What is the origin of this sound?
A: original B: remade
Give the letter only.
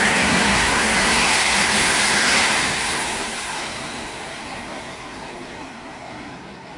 B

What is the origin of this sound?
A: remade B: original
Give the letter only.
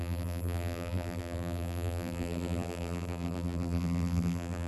A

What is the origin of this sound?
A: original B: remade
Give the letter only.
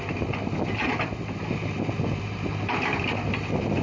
A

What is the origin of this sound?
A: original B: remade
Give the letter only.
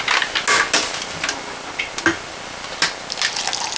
A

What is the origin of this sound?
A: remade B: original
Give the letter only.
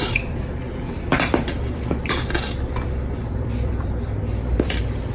A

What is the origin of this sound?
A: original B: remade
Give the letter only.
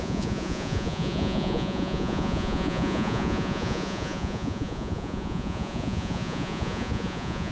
B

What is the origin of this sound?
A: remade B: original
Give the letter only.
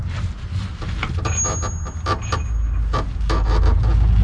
B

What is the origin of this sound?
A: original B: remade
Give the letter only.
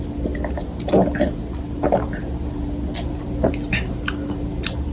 A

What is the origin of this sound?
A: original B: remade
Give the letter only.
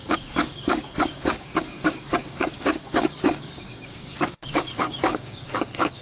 B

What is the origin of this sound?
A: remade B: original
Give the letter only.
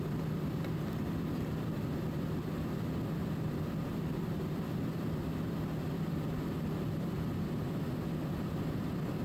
A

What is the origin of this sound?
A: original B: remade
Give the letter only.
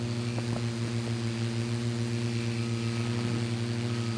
A